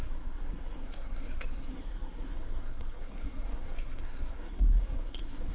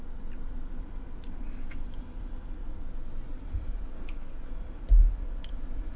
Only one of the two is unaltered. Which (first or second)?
second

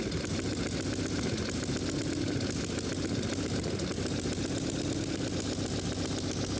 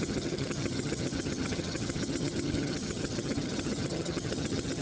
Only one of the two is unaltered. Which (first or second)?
first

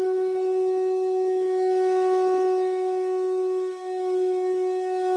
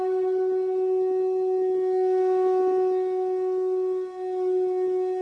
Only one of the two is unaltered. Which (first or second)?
second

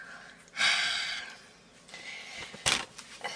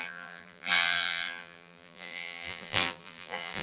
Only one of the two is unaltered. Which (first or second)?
first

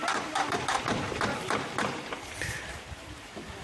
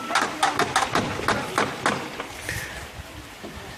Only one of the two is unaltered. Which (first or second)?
second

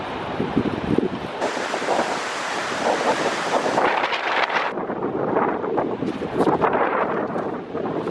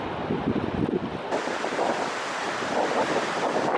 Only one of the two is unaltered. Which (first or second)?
second